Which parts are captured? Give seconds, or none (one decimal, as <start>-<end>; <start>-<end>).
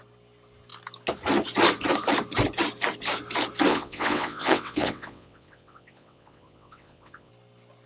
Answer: 0.0-3.7; 7.3-7.9